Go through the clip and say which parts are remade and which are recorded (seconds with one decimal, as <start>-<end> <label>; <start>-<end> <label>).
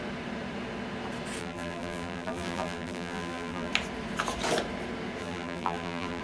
0.0-1.4 recorded; 1.4-3.7 remade; 3.7-5.2 recorded; 5.2-6.2 remade